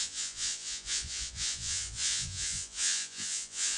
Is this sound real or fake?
fake